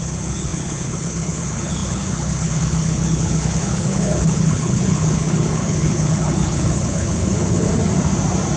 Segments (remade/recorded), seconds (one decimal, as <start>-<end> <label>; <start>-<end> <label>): 0.0-7.7 remade; 7.7-8.6 recorded